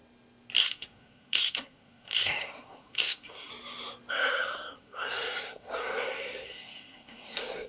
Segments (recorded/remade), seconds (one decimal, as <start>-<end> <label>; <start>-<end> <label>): 0.0-0.6 recorded; 0.6-3.5 remade; 3.5-4.1 recorded; 4.1-7.7 remade